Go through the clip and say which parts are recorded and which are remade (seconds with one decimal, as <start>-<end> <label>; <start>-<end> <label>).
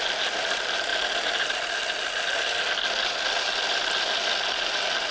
0.0-5.1 recorded